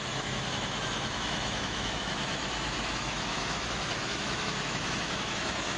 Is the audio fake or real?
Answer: fake